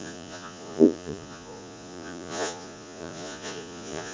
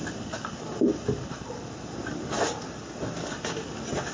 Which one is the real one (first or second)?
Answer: second